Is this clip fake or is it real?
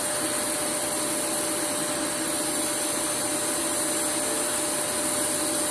real